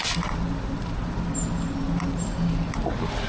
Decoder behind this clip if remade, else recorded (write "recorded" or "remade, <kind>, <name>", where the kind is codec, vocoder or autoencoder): recorded